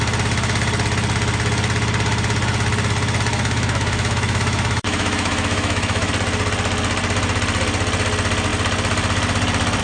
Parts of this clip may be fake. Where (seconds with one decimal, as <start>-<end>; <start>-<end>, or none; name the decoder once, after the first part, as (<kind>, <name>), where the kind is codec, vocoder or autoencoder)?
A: 3.3-6.1 (autoencoder, DAC-VAE)